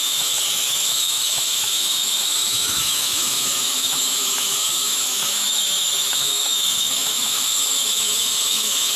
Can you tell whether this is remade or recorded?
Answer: remade